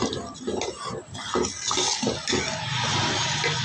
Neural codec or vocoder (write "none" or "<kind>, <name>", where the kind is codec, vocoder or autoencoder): none